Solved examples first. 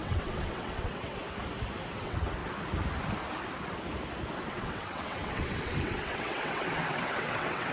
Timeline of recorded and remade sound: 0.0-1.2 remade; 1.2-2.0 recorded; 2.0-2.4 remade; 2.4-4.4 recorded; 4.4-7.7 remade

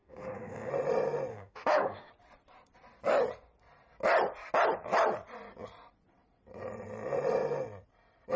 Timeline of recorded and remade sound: 0.0-0.7 remade; 0.7-1.3 recorded; 1.3-2.1 remade; 2.1-8.4 recorded

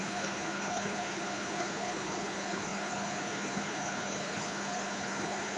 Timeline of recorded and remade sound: 0.0-5.6 remade

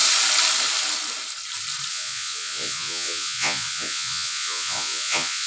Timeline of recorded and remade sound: 0.0-1.9 recorded; 1.9-5.5 remade

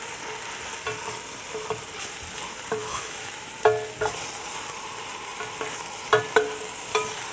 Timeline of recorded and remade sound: 0.0-2.8 recorded; 2.8-3.5 remade; 3.5-7.3 recorded